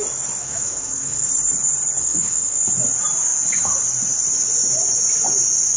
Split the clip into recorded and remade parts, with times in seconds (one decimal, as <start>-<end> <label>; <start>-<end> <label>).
0.0-0.4 recorded; 0.4-1.3 remade; 1.3-2.0 recorded; 2.0-2.6 remade; 2.6-5.8 recorded